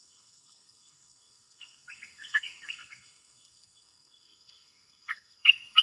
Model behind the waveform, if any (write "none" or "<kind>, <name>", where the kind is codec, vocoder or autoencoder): codec, SNAC